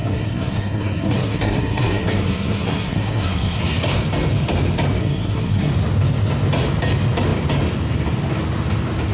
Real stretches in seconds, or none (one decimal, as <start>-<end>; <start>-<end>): 3.6-5.0; 5.7-9.1